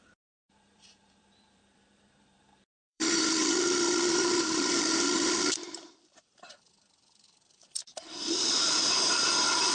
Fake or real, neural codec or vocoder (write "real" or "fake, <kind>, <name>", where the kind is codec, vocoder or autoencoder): fake, vocoder, BigVGAN v2